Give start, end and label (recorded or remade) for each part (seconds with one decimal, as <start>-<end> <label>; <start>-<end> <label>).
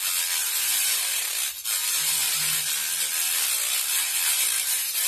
0.0-0.4 recorded; 0.4-1.1 remade; 1.1-1.8 recorded; 1.8-2.7 remade; 2.7-3.9 recorded; 3.9-5.1 remade